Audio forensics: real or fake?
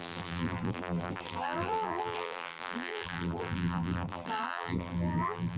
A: fake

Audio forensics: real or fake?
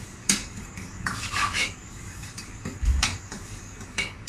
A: fake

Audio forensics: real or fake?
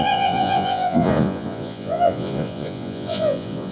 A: fake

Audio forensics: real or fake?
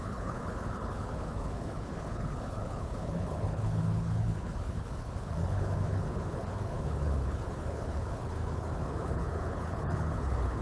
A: fake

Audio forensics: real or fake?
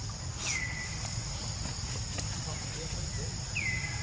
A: real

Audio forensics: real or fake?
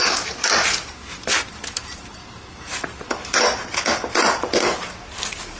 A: real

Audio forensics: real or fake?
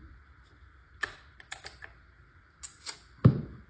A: real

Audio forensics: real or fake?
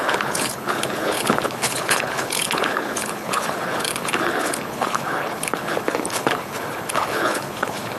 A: fake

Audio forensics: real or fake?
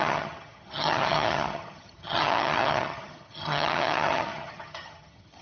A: fake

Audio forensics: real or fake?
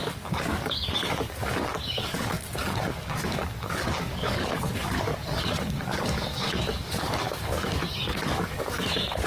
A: fake